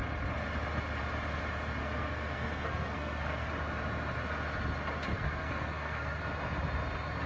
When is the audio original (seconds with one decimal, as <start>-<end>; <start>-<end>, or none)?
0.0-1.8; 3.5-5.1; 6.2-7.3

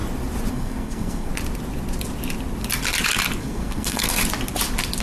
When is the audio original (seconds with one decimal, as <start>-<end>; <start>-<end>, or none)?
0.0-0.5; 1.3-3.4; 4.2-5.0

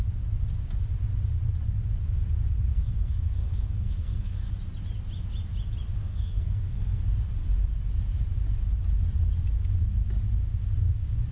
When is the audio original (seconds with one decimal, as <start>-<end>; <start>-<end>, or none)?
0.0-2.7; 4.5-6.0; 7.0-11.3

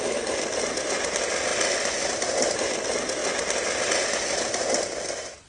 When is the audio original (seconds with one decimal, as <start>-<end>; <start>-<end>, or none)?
0.0-5.5

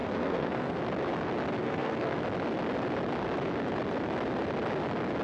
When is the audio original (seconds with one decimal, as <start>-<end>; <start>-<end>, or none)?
0.8-1.6; 2.2-5.2